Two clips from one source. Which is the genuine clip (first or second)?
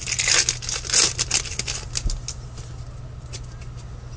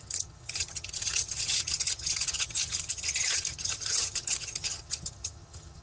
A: first